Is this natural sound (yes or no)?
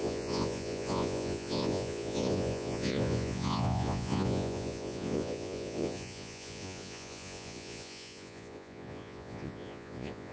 no